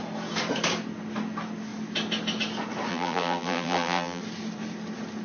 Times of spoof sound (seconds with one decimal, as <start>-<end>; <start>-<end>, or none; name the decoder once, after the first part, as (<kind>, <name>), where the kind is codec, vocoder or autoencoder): 2.9-4.2 (vocoder, BigVGAN v2)